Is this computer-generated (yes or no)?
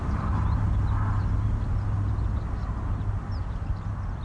no